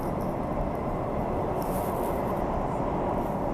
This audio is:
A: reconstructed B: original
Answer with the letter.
B